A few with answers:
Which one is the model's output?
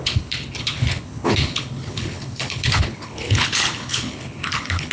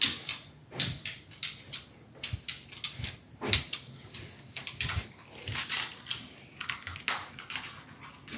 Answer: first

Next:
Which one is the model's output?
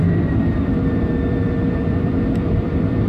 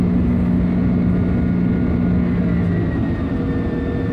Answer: first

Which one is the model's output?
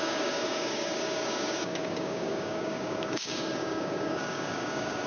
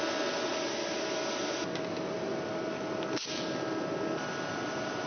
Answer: first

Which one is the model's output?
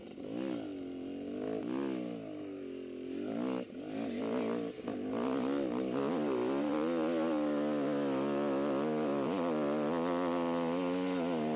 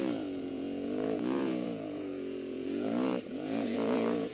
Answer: second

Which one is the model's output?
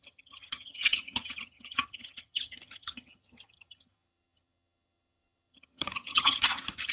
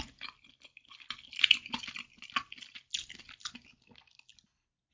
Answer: first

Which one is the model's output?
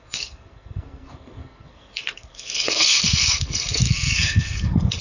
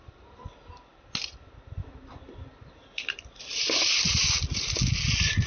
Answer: first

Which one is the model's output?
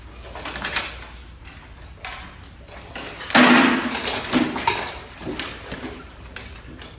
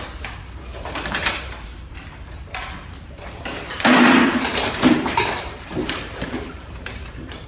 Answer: second